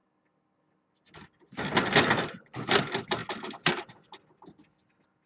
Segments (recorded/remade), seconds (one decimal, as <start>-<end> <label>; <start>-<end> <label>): 0.0-5.3 recorded